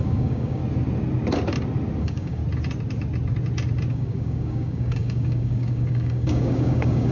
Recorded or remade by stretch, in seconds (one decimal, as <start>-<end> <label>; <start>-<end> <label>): 0.0-0.6 remade; 0.6-2.0 recorded; 2.0-2.4 remade; 2.4-3.9 recorded; 3.9-7.1 remade